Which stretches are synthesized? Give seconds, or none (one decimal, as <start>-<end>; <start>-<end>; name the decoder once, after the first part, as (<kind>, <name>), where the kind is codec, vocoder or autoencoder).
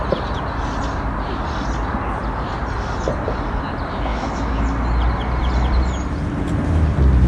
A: 4.1-4.6 (autoencoder, DAC-VAE)